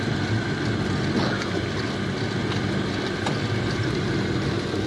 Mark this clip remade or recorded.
recorded